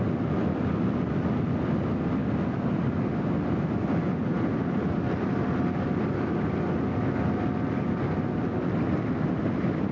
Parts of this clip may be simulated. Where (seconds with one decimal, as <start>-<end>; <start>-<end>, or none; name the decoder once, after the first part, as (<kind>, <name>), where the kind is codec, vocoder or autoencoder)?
none